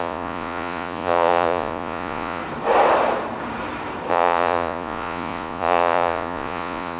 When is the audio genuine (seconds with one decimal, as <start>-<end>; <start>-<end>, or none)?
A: 2.4-4.1